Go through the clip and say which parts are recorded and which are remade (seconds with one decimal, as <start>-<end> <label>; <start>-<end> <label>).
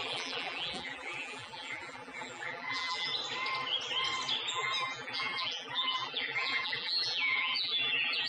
0.0-3.1 remade; 3.1-4.5 recorded; 4.5-8.3 remade